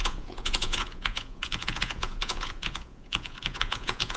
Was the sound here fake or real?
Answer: fake